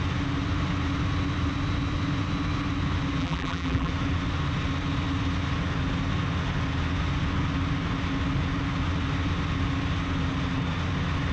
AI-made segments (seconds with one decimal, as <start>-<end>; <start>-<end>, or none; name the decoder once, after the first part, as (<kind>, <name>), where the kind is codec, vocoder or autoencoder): 3.2-3.9 (vocoder, BigVGAN v2)